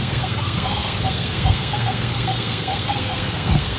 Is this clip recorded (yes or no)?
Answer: no